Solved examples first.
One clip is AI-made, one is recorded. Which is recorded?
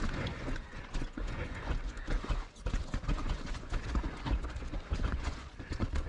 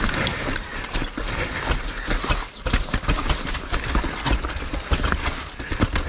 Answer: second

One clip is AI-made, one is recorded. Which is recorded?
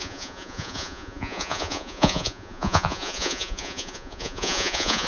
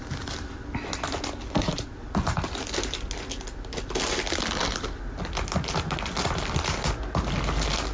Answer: second